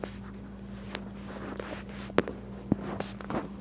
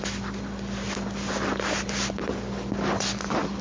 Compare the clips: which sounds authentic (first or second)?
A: first